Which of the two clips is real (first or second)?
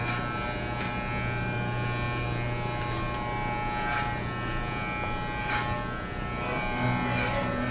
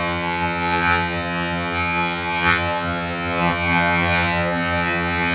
first